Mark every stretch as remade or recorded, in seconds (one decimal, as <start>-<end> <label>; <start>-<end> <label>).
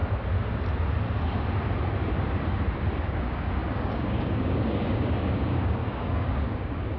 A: 0.0-3.0 recorded; 3.0-7.0 remade